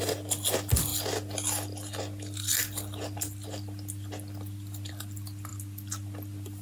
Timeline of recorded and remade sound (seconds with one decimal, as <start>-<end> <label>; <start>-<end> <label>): 0.0-6.6 recorded